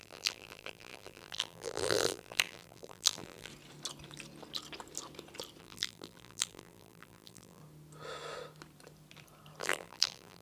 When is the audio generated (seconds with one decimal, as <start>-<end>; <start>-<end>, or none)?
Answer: 0.0-3.5; 5.6-7.6; 9.6-10.4